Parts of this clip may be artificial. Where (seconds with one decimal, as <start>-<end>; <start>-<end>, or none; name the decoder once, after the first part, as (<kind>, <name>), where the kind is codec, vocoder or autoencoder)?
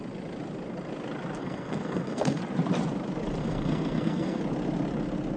1.4-2.4 (codec, SNAC); 3.4-4.4